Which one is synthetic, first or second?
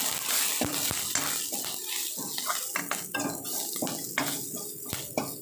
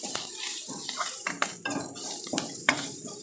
second